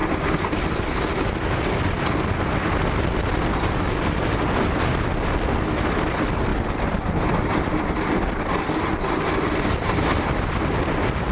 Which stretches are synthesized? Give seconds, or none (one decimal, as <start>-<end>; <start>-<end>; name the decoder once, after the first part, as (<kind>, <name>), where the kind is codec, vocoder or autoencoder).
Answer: none